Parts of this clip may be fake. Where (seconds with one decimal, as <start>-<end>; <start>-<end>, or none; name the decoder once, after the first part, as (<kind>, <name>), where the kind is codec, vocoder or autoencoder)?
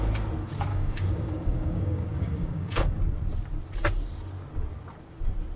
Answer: 0.7-3.0 (codec, DAC)